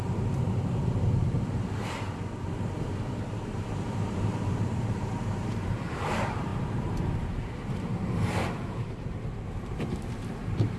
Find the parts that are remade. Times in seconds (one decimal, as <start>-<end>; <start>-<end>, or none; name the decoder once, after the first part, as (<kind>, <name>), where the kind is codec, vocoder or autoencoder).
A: 0.0-10.8 (vocoder, BigVGAN v2)